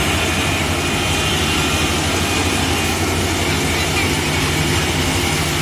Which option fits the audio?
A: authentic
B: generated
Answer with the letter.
A